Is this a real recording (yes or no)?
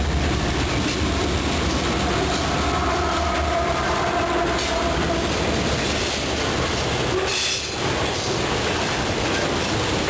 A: yes